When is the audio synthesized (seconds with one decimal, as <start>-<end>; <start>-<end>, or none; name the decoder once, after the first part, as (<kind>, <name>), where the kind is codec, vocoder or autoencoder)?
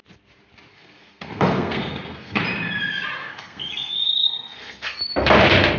0.7-2.4 (codec, SNAC); 3.2-5.0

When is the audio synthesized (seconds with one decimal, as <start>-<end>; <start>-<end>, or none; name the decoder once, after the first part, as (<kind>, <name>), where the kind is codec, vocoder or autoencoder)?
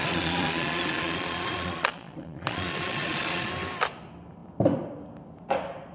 0.0-3.5 (vocoder, Vocos)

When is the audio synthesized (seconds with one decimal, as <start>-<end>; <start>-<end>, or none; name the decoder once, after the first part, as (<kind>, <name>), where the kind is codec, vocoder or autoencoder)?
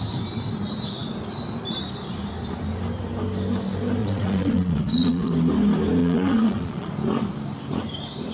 4.0-5.3 (vocoder, Vocos); 6.0-6.9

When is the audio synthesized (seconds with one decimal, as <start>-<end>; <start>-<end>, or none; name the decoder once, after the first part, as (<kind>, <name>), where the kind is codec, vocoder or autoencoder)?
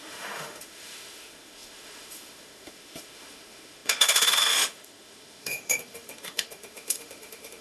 0.0-7.6 (autoencoder, DAC-VAE)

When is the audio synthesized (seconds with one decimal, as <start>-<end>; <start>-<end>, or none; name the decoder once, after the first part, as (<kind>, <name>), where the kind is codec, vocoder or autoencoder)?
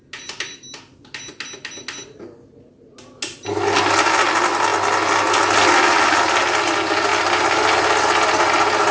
none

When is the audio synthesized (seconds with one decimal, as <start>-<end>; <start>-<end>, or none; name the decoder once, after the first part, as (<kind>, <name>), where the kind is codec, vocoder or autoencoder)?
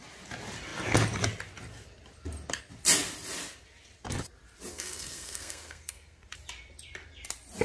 4.7-6.2 (codec, SNAC)